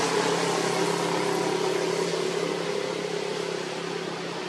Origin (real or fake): real